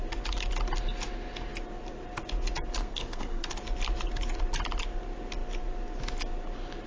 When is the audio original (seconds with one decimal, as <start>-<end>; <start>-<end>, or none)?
0.0-2.8; 3.5-6.9